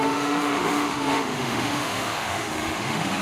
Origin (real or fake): fake